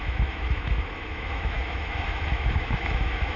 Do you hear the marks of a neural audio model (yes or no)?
yes